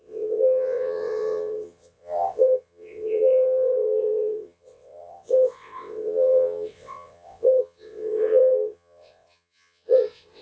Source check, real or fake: fake